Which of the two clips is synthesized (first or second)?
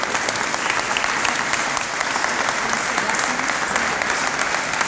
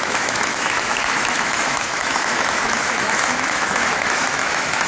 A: second